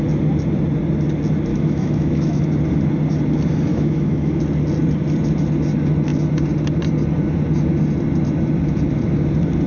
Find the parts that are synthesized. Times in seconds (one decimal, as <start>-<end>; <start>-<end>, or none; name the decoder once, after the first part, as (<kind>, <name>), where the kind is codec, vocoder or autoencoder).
1.5-2.4 (autoencoder, DAC-VAE); 3.7-4.4